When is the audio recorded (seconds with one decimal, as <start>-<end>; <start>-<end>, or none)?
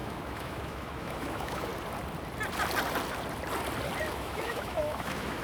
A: 1.7-4.1